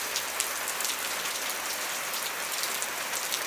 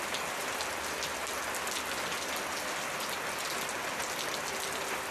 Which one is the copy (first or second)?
first